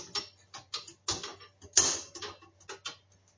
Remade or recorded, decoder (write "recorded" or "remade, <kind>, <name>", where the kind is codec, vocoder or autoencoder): recorded